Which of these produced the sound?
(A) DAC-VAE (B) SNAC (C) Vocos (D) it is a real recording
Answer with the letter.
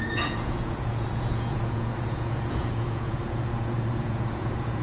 C